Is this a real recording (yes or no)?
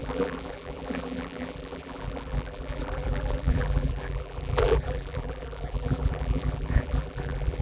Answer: no